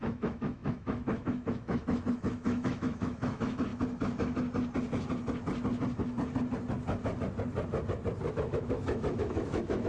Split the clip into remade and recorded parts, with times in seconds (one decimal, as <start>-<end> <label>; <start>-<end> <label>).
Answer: 0.0-3.7 remade; 3.7-8.3 recorded; 8.3-9.9 remade